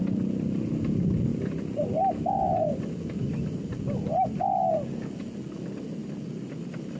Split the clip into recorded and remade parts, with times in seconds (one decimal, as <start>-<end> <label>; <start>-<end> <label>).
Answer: 0.0-1.3 recorded; 1.3-1.9 remade; 1.9-2.6 recorded; 2.6-4.6 remade; 4.6-6.0 recorded; 6.0-7.0 remade